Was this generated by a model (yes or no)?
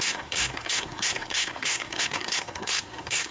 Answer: yes